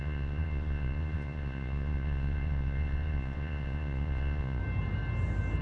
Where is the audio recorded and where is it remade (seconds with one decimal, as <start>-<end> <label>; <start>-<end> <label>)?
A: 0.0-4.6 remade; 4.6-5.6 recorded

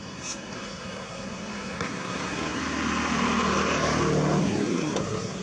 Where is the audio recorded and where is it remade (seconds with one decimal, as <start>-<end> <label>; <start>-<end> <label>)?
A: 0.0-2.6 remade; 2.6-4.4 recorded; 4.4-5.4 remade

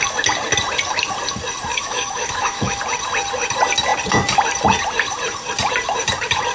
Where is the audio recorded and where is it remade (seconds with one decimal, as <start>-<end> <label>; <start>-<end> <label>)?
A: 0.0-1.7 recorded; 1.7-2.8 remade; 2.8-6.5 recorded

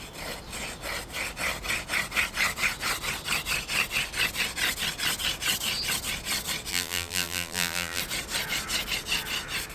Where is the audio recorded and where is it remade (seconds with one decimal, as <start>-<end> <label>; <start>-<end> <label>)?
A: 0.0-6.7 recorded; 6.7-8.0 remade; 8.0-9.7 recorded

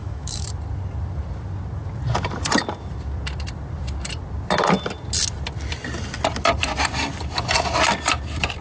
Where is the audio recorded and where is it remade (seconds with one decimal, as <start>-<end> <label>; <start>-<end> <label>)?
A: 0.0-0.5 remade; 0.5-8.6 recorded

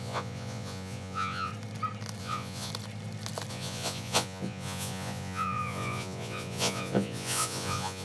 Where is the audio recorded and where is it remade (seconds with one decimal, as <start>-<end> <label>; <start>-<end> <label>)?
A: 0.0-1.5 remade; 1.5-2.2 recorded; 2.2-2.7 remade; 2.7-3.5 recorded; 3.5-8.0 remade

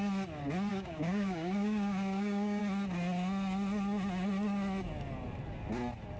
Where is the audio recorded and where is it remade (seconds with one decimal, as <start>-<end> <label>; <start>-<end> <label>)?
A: 0.0-0.7 recorded; 0.7-2.6 remade; 2.6-6.2 recorded

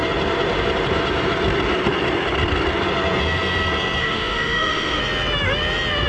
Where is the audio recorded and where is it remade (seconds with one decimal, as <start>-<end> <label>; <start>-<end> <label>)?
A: 0.0-4.0 recorded; 4.0-5.0 remade; 5.0-6.1 recorded